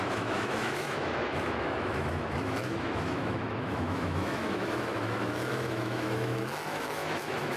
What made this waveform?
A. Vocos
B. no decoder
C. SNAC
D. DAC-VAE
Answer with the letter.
D